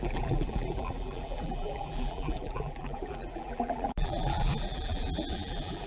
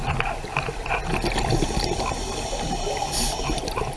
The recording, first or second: second